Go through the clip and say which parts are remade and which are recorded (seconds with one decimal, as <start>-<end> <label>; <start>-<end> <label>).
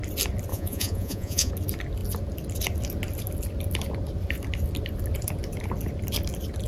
0.0-0.5 recorded; 0.5-1.5 remade; 1.5-6.7 recorded